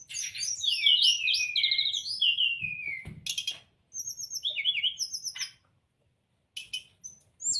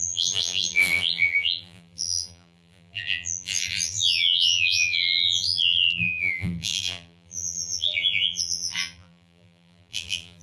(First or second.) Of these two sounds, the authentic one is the first